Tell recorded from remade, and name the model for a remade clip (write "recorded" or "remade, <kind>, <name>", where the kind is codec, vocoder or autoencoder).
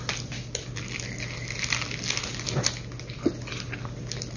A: recorded